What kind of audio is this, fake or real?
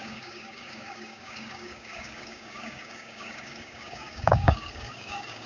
fake